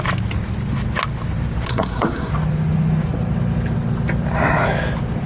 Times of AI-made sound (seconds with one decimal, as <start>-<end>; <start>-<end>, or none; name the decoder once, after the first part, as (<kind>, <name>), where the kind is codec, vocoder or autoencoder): 1.7-2.3 (codec, SNAC)